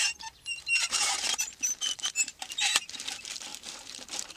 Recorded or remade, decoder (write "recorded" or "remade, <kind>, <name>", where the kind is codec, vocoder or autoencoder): remade, vocoder, BigVGAN v2